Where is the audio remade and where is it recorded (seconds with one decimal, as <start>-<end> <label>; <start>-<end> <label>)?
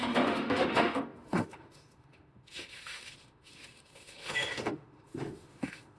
0.0-6.0 remade